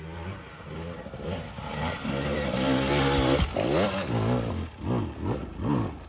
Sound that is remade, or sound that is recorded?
recorded